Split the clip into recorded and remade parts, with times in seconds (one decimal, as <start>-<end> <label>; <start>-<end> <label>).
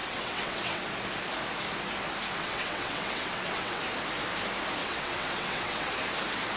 0.0-0.9 remade; 0.9-2.4 recorded; 2.4-3.8 remade; 3.8-4.8 recorded; 4.8-5.9 remade; 5.9-6.6 recorded